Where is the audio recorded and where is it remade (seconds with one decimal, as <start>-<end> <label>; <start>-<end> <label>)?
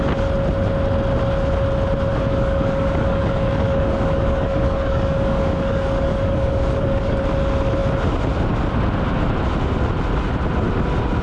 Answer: 0.0-2.1 recorded; 2.1-7.2 remade; 7.2-11.2 recorded